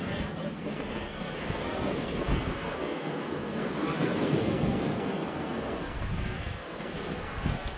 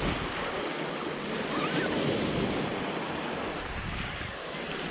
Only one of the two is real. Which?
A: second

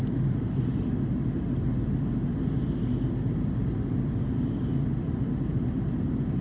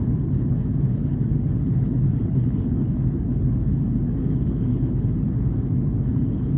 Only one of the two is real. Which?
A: first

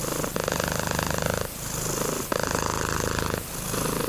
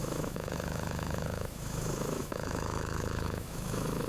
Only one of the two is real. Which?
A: first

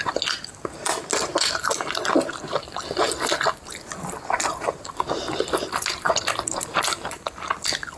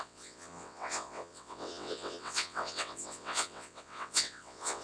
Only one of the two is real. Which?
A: first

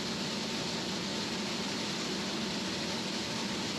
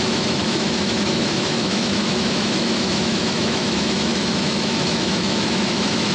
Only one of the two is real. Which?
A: first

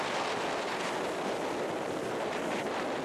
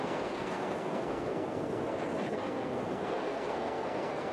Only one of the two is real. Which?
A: first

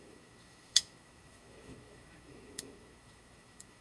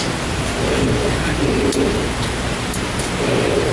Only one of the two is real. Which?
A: second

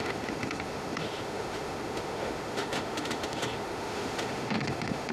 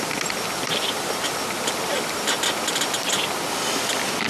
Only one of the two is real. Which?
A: second